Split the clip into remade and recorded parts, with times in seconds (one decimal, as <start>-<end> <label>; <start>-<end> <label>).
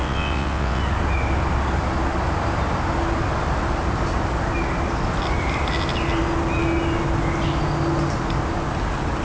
0.0-0.8 remade; 0.8-9.2 recorded